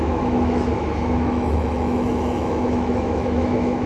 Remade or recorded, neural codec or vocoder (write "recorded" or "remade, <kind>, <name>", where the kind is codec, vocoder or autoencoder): remade, autoencoder, DAC-VAE